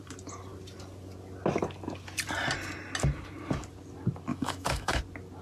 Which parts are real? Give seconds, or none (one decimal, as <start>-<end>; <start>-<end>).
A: 0.0-4.3; 5.0-5.4